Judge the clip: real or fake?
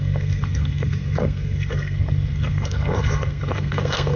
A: fake